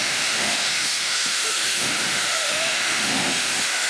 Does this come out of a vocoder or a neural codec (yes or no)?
yes